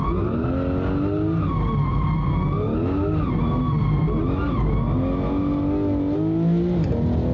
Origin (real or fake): real